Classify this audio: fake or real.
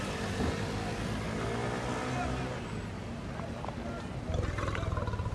real